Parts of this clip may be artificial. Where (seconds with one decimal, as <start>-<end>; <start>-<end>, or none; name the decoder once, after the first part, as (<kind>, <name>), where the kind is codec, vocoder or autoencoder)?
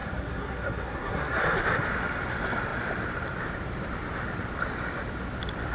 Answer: 0.0-1.4 (codec, SNAC)